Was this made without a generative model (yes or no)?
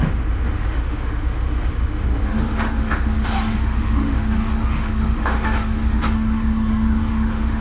no